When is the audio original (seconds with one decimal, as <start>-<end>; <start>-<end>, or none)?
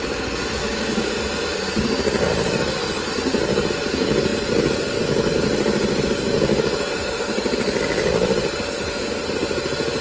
0.0-0.6; 1.1-10.0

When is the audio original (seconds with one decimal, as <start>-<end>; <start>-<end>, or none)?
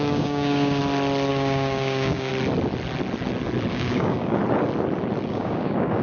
0.8-1.3; 2.3-3.7; 4.4-5.3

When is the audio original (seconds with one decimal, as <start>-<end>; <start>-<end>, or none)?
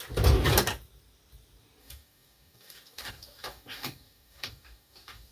0.0-1.8